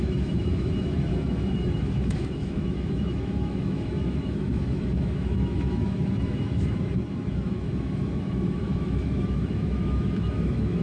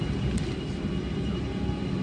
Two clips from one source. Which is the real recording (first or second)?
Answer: second